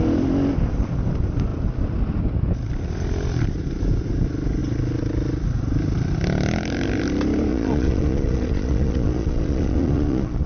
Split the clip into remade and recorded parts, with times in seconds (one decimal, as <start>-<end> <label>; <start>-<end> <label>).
0.0-7.5 recorded; 7.5-10.5 remade